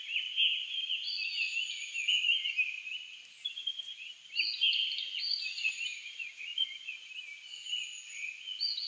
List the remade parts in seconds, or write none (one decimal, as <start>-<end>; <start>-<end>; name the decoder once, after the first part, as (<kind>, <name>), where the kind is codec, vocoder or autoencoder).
6.5-7.1 (vocoder, Vocos)